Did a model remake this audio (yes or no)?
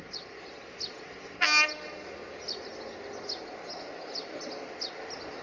no